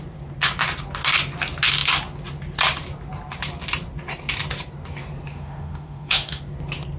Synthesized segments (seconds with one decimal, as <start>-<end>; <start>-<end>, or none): 5.3-6.4